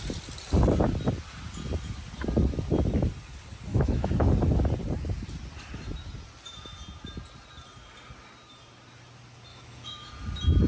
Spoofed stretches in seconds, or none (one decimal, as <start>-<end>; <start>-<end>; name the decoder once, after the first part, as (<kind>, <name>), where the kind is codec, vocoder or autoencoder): 3.7-4.3 (autoencoder, DAC-VAE); 9.5-10.1